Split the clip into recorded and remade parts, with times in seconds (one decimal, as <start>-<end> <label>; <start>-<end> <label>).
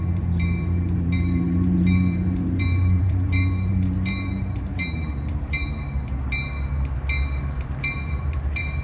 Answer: 0.0-5.6 remade; 5.6-7.4 recorded; 7.4-8.8 remade